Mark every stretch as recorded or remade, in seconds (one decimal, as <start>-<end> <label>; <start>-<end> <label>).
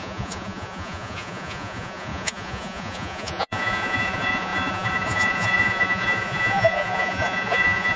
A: 0.0-8.0 remade